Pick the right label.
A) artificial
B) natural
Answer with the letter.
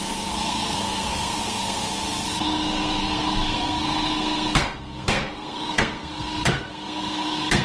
A